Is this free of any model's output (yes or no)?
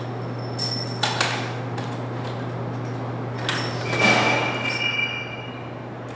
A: yes